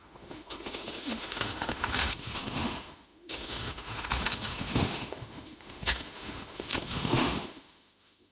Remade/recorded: remade